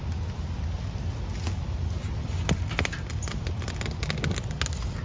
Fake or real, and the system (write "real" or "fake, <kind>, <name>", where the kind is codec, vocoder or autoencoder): real